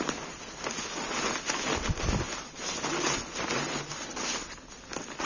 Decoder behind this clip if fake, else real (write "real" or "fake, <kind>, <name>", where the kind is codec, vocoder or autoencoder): real